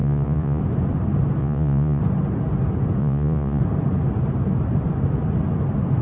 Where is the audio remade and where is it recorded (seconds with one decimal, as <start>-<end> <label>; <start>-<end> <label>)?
0.0-0.6 remade; 0.6-1.4 recorded; 1.4-2.0 remade; 2.0-3.0 recorded; 3.0-3.6 remade; 3.6-6.0 recorded